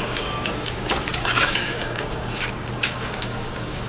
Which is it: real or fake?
fake